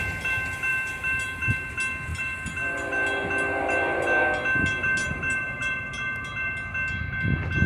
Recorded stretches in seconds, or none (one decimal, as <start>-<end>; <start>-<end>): 0.0-0.7; 1.7-2.1; 2.9-5.0; 5.8-7.7